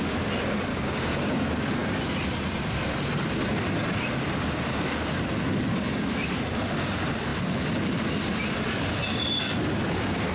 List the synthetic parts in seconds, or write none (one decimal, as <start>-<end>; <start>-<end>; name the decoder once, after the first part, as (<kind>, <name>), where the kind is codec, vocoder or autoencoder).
0.7-1.3 (codec, DAC)